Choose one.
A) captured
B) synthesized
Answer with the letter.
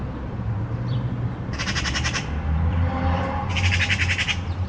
B